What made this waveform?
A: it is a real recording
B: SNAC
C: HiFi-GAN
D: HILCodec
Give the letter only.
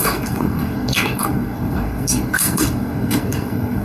B